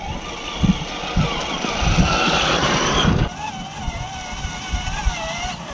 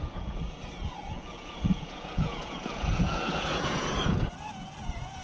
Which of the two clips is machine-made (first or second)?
second